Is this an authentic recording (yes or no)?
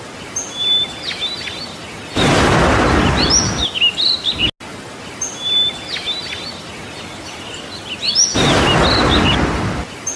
yes